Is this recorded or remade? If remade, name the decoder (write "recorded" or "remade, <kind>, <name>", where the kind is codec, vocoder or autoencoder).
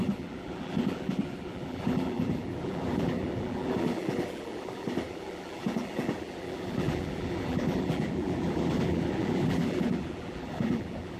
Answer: remade, vocoder, BigVGAN v2